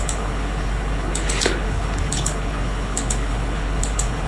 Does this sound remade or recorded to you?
remade